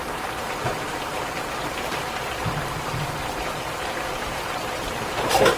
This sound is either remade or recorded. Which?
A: remade